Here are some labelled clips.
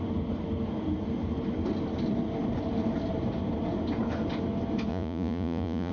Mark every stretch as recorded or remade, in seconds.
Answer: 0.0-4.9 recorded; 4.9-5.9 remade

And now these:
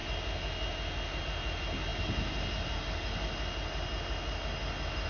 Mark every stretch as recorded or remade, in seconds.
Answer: 0.0-5.1 recorded

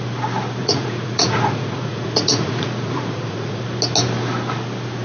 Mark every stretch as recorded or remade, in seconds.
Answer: 0.0-0.6 recorded; 0.6-3.6 remade; 3.6-5.0 recorded